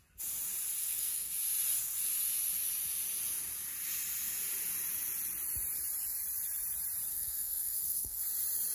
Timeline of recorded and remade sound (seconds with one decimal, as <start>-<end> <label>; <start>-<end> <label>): 0.0-0.8 recorded; 0.8-1.3 remade; 1.3-7.1 recorded; 7.1-8.2 remade; 8.2-8.7 recorded